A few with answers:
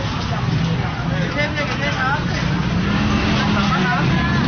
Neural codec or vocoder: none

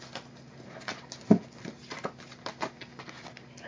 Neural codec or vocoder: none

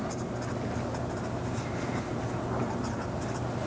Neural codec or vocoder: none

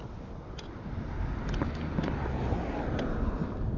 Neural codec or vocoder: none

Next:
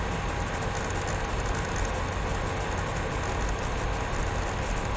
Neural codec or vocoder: none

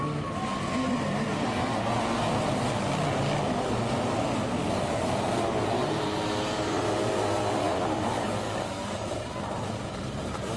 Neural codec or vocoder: none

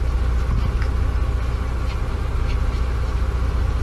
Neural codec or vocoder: none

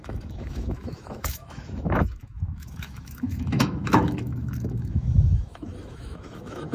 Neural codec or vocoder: autoencoder, DAC-VAE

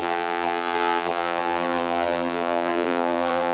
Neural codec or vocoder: vocoder, BigVGAN v2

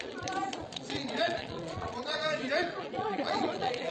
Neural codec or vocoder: vocoder, Vocos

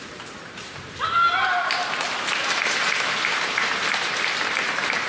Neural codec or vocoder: vocoder, BigVGAN v2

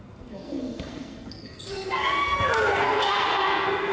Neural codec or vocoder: codec, SNAC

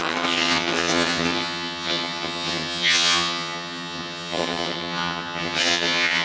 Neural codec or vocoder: vocoder, HiFi-GAN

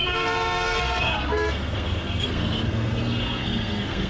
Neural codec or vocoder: codec, SNAC